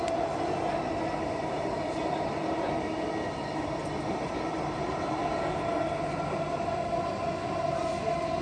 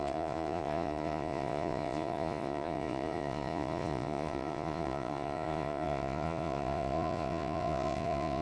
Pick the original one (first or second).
first